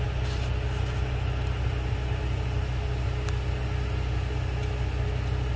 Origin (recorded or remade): recorded